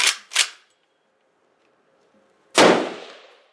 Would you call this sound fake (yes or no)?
no